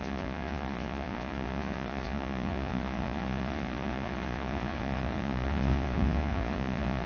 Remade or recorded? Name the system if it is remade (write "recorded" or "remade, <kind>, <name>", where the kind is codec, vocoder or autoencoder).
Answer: remade, vocoder, Vocos